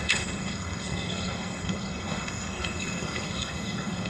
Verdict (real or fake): fake